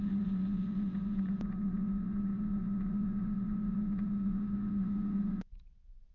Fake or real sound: fake